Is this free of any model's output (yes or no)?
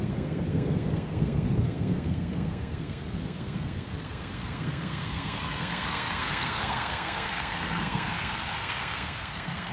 no